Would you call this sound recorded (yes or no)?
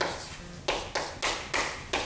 yes